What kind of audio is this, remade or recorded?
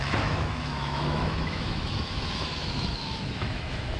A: remade